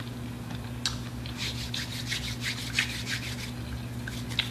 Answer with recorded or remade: recorded